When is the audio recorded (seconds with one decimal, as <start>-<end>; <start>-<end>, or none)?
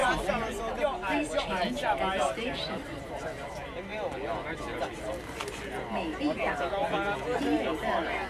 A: 0.0-8.3